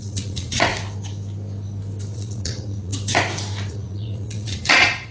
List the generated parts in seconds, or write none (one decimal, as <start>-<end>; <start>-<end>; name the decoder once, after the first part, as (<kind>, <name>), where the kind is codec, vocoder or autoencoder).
0.0-0.7 (vocoder, Vocos); 2.1-2.9; 3.7-5.1